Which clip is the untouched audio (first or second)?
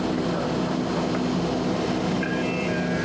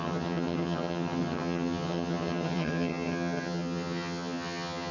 first